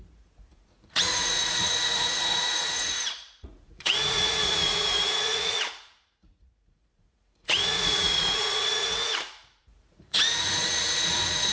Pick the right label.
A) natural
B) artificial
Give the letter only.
B